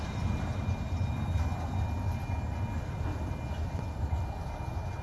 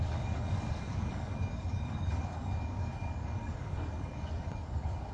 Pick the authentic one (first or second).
first